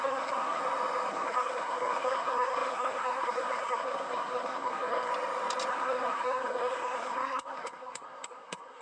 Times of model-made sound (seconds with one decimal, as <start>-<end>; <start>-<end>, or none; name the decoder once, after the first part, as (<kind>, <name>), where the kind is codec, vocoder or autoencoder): 0.0-0.6 (codec, SNAC); 1.1-5.1; 5.7-8.8